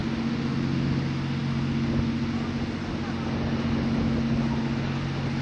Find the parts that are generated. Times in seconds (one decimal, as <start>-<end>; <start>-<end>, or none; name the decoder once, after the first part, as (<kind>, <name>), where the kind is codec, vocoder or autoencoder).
none